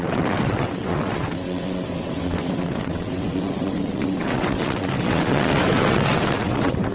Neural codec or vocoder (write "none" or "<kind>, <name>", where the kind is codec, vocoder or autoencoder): vocoder, WaveNeXt